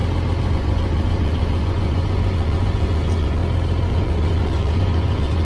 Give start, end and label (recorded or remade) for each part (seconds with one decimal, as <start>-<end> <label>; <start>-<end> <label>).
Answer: 0.0-0.5 recorded; 0.5-3.4 remade; 3.4-3.9 recorded; 3.9-5.4 remade